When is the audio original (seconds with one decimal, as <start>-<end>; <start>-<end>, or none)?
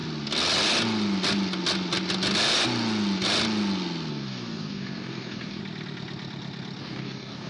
0.0-4.1; 5.6-6.8